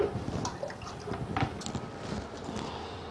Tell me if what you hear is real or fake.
real